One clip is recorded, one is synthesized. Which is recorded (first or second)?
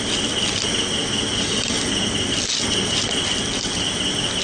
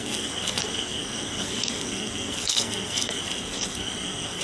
first